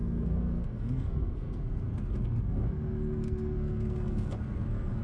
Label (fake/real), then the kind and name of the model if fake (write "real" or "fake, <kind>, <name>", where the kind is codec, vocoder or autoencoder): fake, codec, SNAC